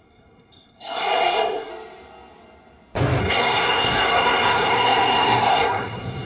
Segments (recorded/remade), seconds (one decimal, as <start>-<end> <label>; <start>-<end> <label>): 0.0-1.7 remade; 1.7-3.2 recorded; 3.2-6.3 remade